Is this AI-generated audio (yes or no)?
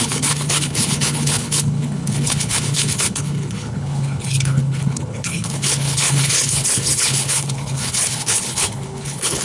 yes